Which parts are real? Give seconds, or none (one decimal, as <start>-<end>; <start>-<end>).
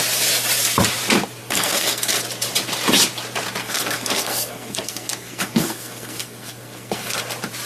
0.0-1.4; 2.2-3.6; 7.2-7.7